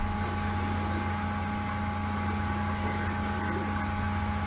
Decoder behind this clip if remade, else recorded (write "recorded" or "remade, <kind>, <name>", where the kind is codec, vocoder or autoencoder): recorded